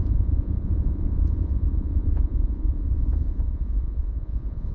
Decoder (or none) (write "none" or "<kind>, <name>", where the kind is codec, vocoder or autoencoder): vocoder, Vocos